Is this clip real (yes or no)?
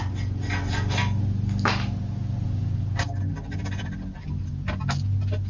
yes